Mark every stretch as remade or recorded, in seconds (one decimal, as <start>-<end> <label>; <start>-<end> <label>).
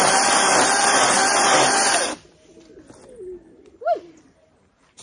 0.0-5.0 recorded